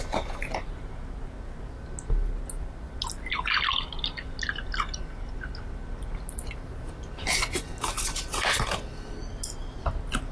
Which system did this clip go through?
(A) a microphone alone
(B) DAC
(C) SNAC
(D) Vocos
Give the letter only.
A